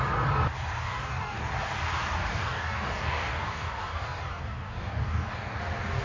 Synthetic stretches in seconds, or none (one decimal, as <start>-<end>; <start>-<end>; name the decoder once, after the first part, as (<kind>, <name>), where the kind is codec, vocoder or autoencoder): 0.8-1.5 (codec, DAC); 2.3-5.6